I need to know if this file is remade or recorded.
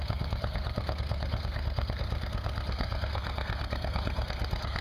remade